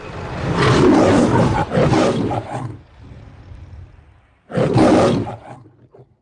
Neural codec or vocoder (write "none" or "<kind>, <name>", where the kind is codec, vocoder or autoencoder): none